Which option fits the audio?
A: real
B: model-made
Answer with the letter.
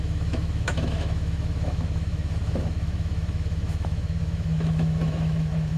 B